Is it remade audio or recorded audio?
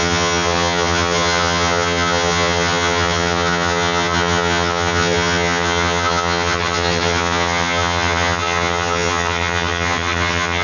remade